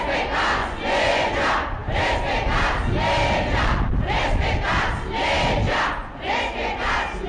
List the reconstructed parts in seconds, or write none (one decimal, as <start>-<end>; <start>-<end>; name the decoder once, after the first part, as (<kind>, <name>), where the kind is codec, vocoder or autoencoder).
0.6-1.3 (vocoder, Vocos); 6.0-6.8